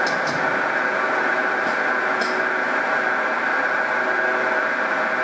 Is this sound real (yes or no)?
yes